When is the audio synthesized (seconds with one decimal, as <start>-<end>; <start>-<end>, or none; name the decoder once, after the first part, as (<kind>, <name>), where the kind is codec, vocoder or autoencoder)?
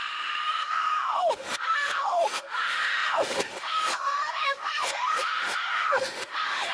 0.0-6.7 (autoencoder, DAC-VAE)